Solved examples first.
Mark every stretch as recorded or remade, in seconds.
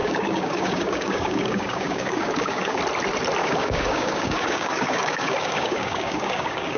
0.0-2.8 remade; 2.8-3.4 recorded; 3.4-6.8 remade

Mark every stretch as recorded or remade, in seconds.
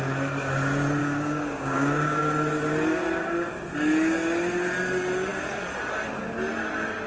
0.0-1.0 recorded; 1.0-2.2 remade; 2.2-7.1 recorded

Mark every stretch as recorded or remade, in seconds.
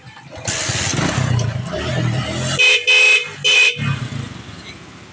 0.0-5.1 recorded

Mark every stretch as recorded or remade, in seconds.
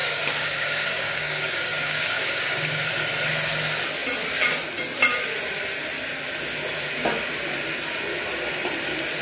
0.0-2.9 remade; 2.9-9.2 recorded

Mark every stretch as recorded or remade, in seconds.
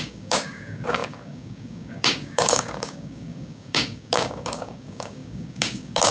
0.0-6.1 remade